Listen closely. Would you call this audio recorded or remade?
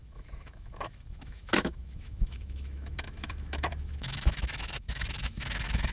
remade